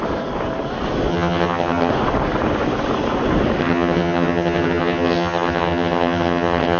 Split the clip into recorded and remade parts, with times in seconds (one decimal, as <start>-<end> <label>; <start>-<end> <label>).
0.0-1.1 recorded; 1.1-1.9 remade; 1.9-3.6 recorded; 3.6-6.8 remade